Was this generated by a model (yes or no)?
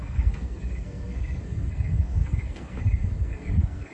yes